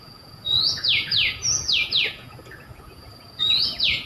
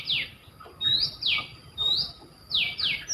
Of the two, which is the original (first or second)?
second